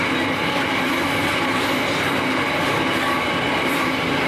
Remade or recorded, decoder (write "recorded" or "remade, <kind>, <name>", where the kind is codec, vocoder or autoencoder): recorded